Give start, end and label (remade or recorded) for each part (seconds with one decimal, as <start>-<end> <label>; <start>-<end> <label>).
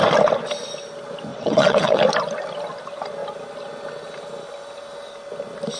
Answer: 0.0-1.3 recorded; 1.3-2.0 remade; 2.0-5.8 recorded